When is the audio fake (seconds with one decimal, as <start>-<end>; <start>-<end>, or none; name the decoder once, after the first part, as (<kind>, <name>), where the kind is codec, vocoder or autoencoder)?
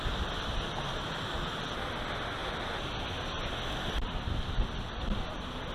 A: none